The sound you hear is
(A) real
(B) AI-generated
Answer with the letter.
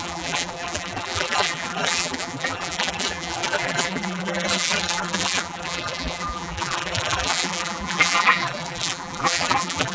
B